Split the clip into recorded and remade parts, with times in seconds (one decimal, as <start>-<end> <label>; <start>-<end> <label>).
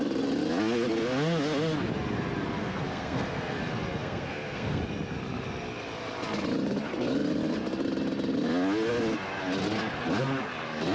0.0-2.6 recorded; 2.6-3.6 remade; 3.6-4.0 recorded; 4.0-4.8 remade; 4.8-10.9 recorded